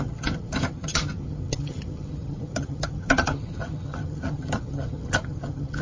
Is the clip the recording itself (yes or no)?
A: no